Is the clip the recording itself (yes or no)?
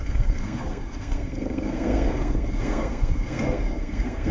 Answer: no